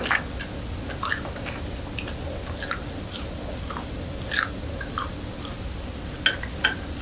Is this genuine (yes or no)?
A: yes